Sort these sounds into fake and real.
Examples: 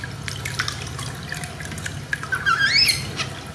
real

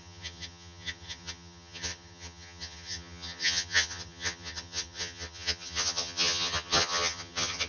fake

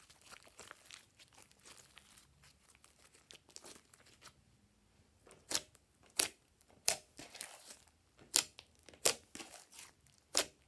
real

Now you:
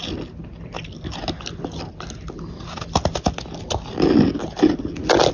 real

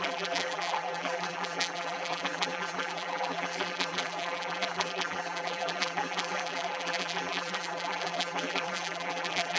fake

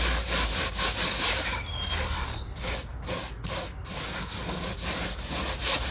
real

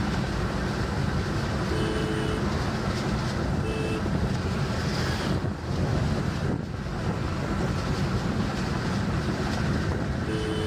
real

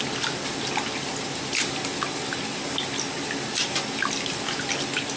real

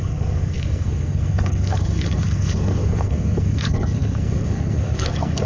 fake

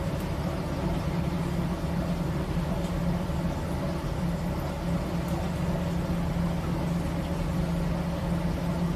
real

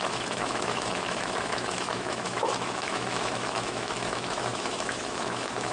fake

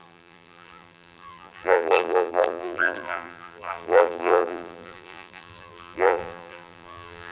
fake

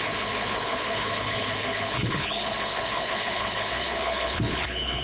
fake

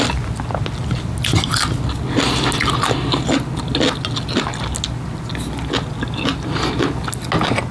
real